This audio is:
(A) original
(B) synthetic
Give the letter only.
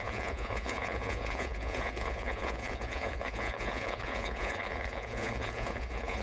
B